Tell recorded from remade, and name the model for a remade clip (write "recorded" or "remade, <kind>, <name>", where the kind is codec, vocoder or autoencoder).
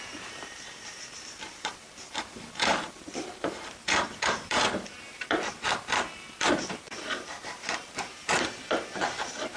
remade, vocoder, BigVGAN v2